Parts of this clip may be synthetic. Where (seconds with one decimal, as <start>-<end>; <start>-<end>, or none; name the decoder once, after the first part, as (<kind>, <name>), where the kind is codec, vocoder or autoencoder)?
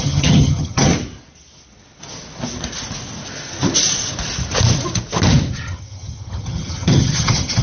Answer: 0.0-0.9 (vocoder, HiFi-GAN); 5.5-7.6